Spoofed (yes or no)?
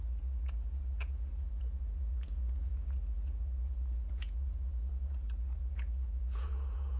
yes